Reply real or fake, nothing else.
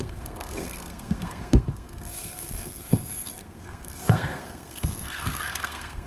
fake